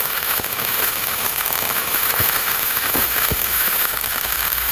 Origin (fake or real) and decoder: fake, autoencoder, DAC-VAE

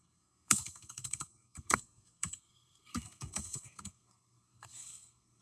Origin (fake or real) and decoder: fake, codec, SNAC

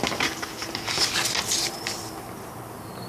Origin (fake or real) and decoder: real